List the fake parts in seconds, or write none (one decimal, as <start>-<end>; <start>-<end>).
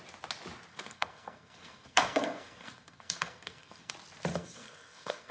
0.7-3.9; 4.3-5.3